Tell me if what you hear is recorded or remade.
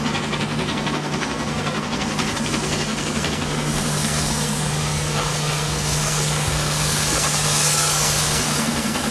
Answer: remade